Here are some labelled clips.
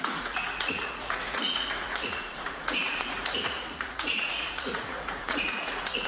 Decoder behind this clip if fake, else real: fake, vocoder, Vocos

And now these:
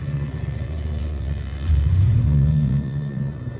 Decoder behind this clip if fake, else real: fake, vocoder, Vocos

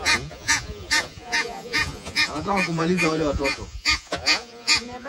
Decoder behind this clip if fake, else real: fake, vocoder, Vocos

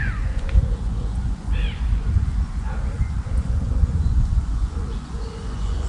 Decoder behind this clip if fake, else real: fake, vocoder, Vocos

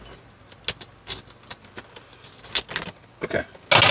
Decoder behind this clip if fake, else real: real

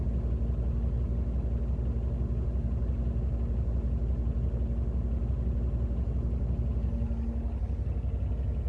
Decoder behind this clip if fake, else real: real